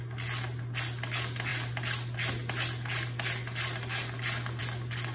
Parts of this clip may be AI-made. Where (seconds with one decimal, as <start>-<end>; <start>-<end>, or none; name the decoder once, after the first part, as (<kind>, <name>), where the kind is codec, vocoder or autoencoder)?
none